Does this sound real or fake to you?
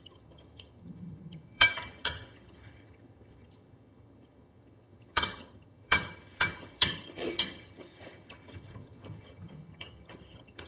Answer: fake